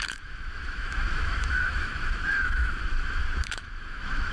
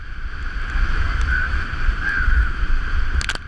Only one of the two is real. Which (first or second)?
second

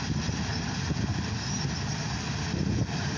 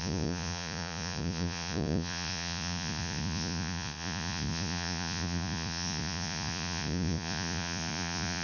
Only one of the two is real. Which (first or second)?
first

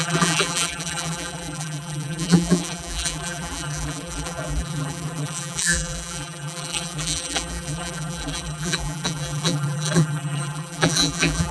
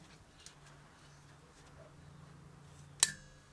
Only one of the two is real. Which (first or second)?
second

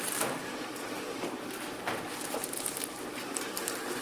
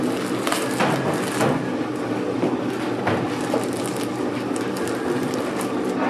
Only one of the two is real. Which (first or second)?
second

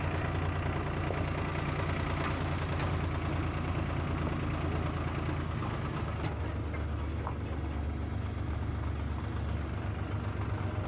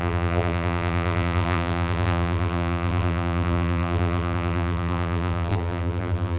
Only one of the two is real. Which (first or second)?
first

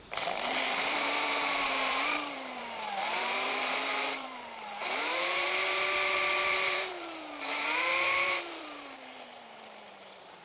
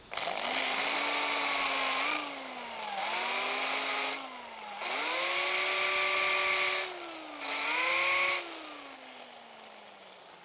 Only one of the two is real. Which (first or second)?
second